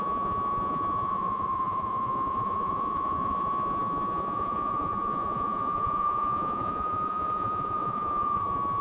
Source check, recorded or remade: remade